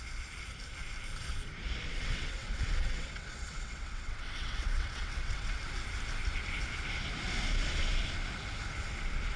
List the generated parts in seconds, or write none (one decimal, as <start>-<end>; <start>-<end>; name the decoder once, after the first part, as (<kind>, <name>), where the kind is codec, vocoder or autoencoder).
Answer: 1.9-5.6 (vocoder, WaveNeXt)